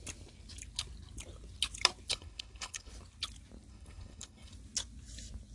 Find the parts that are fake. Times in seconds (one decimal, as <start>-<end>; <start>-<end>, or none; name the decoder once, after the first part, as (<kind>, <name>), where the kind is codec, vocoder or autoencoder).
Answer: 2.1-2.9 (codec, HILCodec); 3.7-4.5